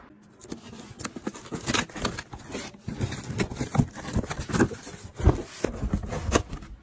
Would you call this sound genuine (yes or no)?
yes